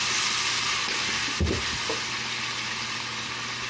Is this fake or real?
real